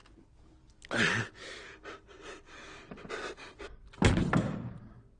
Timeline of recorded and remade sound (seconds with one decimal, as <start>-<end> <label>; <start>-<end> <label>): 0.0-4.2 recorded; 4.2-4.7 remade; 4.7-5.2 recorded